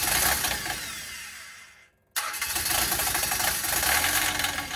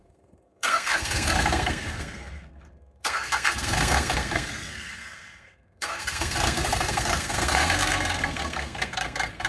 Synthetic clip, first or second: second